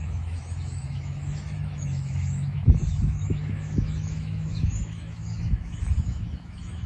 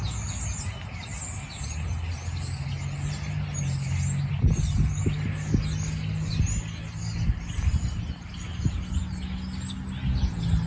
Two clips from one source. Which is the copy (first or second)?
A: first